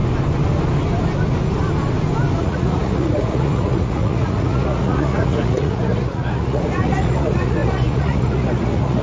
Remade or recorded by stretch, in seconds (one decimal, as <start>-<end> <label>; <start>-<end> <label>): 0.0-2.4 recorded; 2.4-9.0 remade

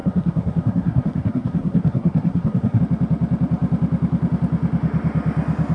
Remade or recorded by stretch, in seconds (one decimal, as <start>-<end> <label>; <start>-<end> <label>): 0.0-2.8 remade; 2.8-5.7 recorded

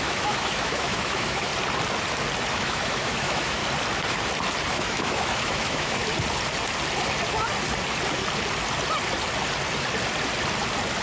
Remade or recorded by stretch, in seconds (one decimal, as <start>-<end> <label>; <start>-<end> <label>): 0.0-1.5 remade; 1.5-2.5 recorded; 2.5-3.6 remade; 3.6-4.7 recorded; 4.7-6.0 remade; 6.0-11.0 recorded

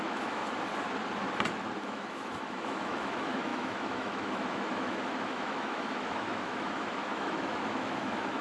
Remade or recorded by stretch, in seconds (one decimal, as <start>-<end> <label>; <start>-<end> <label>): 0.0-0.4 remade; 0.4-1.8 recorded; 1.8-8.4 remade

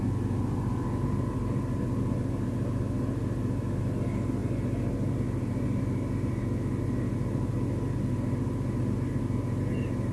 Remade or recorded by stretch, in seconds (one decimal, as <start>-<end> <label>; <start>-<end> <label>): 0.0-10.1 recorded